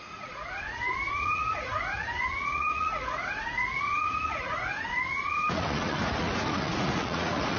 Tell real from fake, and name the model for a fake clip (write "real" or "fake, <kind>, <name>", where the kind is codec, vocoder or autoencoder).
fake, vocoder, Vocos